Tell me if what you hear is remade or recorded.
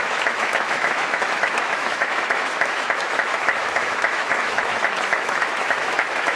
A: remade